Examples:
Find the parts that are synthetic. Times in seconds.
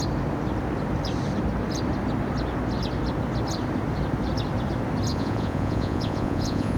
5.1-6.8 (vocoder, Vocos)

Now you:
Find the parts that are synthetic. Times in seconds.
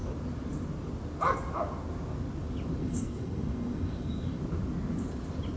2.8-4.4 (codec, SNAC)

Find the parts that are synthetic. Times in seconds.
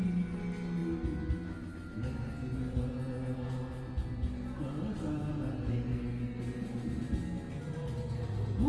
5.9-6.4 (codec, SNAC)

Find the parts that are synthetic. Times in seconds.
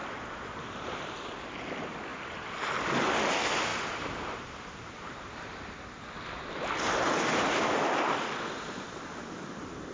0.0-0.9 (vocoder, BigVGAN v2); 3.7-5.9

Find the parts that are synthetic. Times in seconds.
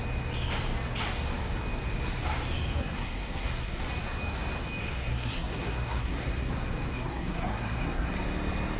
2.8-3.8 (codec, SNAC); 4.8-6.5; 6.9-8.1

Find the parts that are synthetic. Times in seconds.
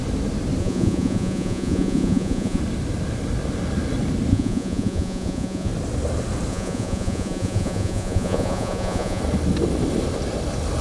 0.6-2.6 (vocoder, Vocos); 4.3-5.7; 6.5-9.2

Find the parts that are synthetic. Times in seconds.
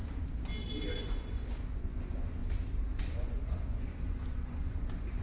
1.0-2.4 (vocoder, Vocos); 3.0-5.2